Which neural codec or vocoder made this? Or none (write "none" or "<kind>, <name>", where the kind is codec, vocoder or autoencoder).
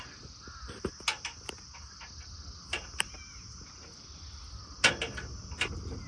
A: none